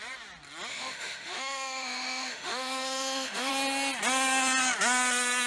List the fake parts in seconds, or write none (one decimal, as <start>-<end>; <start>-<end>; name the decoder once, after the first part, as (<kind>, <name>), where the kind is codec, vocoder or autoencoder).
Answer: 0.7-3.5 (autoencoder, DAC-VAE)